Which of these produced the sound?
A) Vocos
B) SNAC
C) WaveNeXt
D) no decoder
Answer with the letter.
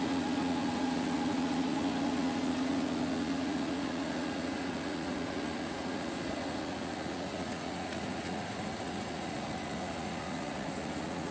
A